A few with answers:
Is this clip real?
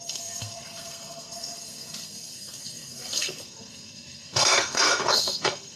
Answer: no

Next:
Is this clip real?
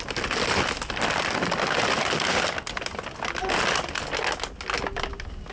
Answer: yes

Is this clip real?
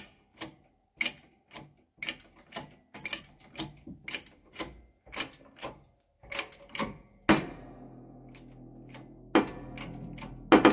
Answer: yes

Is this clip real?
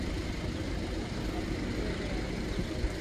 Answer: yes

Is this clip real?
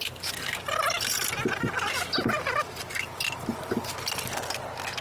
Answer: yes